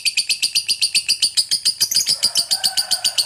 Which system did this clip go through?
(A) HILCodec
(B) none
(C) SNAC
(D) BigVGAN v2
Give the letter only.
D